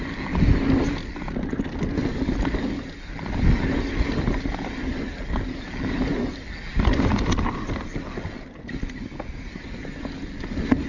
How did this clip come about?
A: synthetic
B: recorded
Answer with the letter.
B